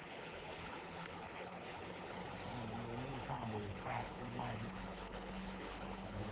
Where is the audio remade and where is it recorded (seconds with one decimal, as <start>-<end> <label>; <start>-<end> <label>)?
0.0-2.2 remade; 2.2-3.1 recorded; 3.1-6.3 remade